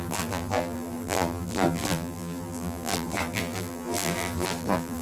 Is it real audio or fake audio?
fake